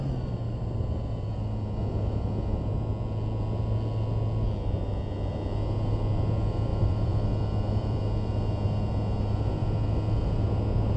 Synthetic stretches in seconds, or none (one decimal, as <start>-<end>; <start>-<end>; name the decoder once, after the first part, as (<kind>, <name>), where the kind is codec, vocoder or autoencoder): 6.7-8.0 (vocoder, BigVGAN v2)